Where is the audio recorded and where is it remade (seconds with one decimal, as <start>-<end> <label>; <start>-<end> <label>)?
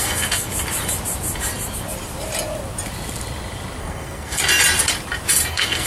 0.0-0.5 remade; 0.5-3.8 recorded; 3.8-4.4 remade; 4.4-5.5 recorded; 5.5-5.9 remade